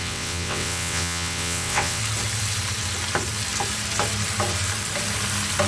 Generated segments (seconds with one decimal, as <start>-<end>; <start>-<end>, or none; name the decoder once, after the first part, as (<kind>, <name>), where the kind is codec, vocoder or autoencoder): 0.0-2.0 (vocoder, WaveNeXt)